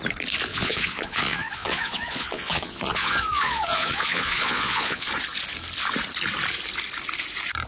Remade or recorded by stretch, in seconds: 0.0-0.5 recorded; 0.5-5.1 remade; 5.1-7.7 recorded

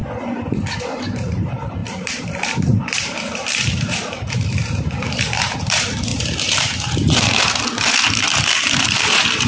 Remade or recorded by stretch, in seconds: 0.0-0.8 recorded; 0.8-9.5 remade

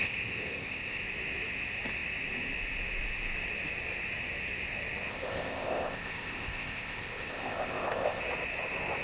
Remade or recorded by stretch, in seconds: 0.0-1.0 remade; 1.0-5.1 recorded; 5.1-8.2 remade; 8.2-9.0 recorded